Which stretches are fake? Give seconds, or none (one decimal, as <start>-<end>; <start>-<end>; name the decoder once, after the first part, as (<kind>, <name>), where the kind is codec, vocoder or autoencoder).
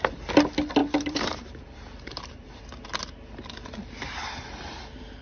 0.8-2.6 (vocoder, BigVGAN v2)